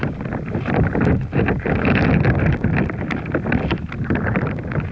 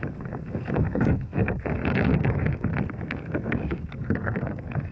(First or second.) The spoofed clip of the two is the second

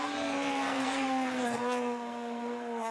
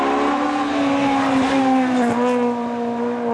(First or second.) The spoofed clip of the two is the first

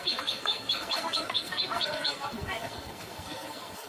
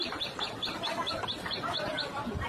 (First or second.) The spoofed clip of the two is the first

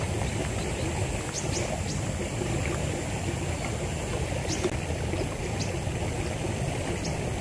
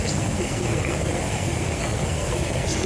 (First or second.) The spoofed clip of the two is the second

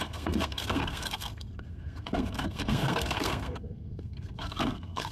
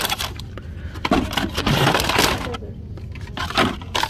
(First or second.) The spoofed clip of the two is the first